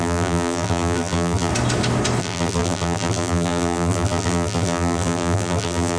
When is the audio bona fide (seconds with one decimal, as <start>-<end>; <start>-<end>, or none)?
1.5-2.2